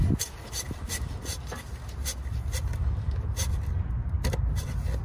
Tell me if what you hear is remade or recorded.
recorded